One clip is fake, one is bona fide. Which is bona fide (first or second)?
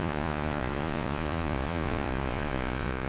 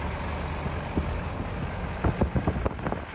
second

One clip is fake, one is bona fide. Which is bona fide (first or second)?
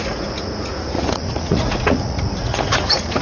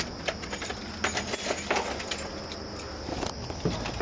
second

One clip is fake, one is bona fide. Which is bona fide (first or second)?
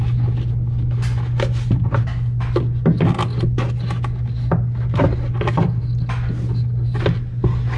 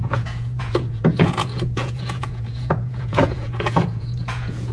first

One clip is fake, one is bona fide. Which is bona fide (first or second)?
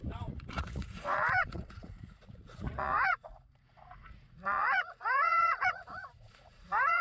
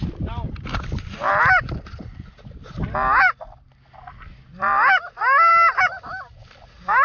second